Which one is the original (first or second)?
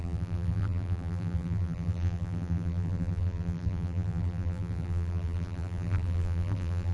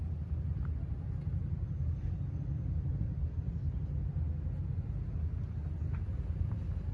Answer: second